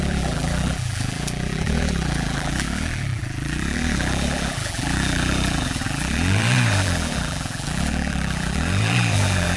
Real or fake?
fake